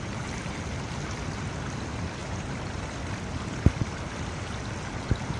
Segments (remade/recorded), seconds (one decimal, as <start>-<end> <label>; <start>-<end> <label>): 0.0-2.2 recorded; 2.2-2.8 remade; 2.8-5.4 recorded

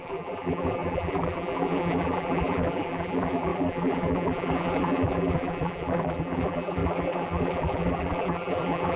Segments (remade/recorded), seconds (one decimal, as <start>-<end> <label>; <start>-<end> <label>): 0.0-9.0 remade